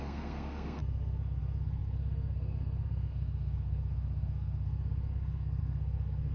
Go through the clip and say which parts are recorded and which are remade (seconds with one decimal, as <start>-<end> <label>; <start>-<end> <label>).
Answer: 0.0-6.3 remade